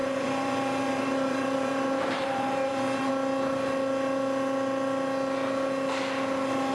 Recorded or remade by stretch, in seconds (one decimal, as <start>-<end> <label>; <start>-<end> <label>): 0.0-3.1 remade; 3.1-6.7 recorded